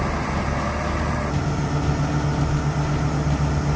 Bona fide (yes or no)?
yes